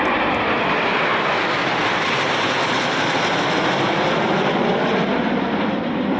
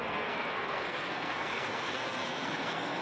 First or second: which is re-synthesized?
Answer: second